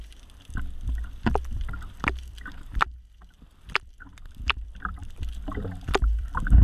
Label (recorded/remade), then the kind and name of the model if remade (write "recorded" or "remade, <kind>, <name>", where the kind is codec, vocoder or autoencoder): remade, vocoder, BigVGAN v2